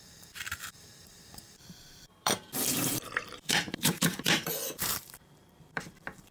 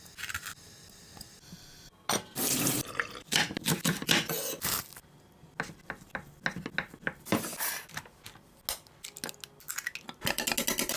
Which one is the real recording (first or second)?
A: second